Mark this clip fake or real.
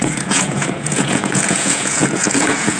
fake